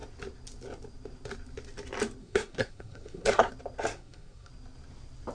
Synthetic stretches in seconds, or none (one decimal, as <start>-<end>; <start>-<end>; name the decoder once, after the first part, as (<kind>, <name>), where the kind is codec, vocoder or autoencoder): 2.2-3.5 (codec, SNAC); 3.9-4.5